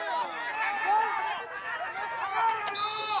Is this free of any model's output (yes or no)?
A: yes